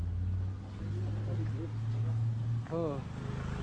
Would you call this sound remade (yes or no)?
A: no